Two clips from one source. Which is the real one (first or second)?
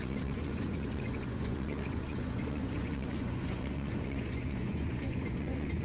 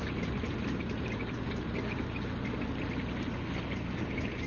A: second